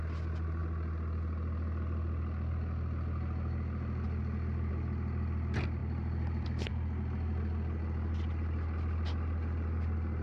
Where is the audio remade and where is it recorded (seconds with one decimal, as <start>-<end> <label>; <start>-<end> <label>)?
0.0-10.2 recorded